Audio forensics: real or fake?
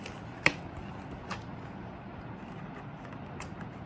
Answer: real